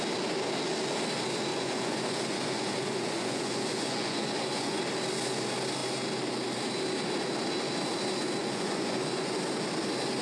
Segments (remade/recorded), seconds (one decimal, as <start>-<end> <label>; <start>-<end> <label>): 0.0-1.5 recorded; 1.5-4.8 remade; 4.8-8.4 recorded; 8.4-9.4 remade; 9.4-10.2 recorded